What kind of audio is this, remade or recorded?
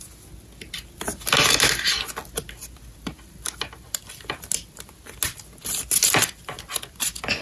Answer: recorded